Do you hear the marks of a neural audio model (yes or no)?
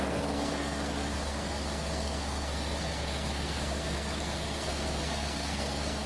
yes